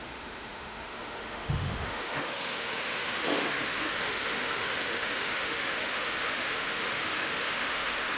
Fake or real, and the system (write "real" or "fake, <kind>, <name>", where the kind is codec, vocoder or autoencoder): fake, autoencoder, DAC-VAE